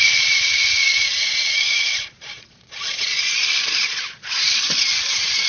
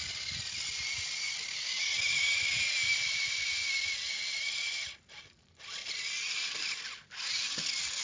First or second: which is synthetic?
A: first